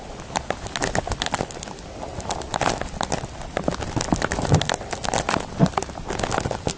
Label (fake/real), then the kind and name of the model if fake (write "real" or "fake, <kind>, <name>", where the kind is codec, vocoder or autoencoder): real